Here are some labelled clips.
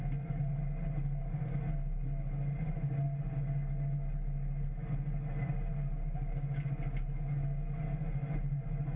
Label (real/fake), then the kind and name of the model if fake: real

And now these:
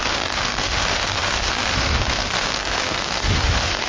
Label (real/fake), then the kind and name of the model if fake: fake, autoencoder, DAC-VAE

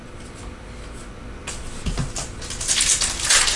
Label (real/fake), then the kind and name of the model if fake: real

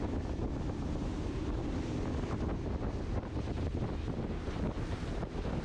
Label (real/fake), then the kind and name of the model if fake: real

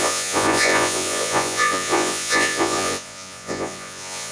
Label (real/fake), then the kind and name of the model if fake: fake, vocoder, Vocos